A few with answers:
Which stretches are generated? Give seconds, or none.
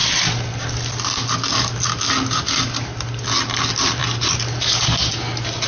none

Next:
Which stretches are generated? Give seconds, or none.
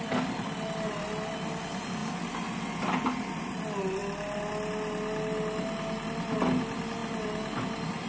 none